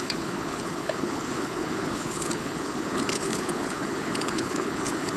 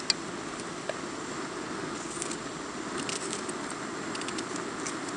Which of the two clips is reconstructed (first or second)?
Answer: first